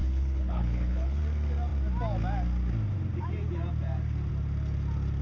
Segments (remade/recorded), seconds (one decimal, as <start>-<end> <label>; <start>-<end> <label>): 0.0-1.2 remade; 1.2-5.2 recorded